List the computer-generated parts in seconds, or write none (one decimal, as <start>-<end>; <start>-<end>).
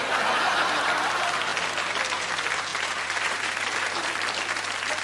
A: 2.7-4.1